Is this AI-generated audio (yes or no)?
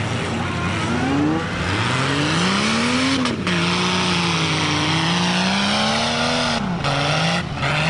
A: no